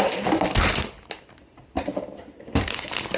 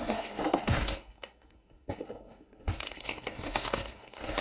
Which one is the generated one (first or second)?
second